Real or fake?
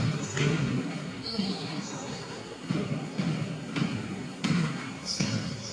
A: fake